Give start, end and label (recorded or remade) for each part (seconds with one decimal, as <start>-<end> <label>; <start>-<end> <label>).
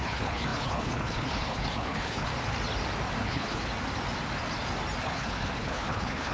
0.0-2.3 remade; 2.3-3.2 recorded; 3.2-3.7 remade; 3.7-5.0 recorded; 5.0-6.3 remade